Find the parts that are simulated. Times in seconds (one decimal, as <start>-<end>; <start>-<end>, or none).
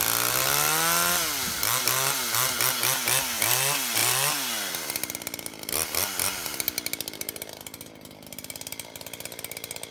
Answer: none